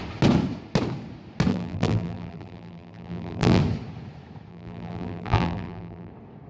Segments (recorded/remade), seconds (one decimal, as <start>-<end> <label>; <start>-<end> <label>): 0.0-1.5 recorded; 1.5-3.6 remade; 3.6-4.5 recorded; 4.5-6.1 remade; 6.1-6.5 recorded